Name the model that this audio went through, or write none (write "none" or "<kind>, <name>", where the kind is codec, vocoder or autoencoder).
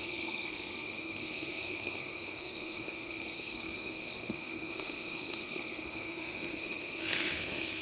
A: codec, SNAC